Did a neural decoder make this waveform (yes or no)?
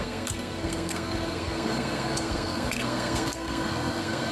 yes